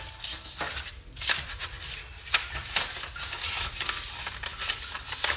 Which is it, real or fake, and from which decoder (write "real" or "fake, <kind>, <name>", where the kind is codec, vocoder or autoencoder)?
real